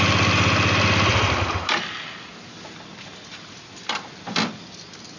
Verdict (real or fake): real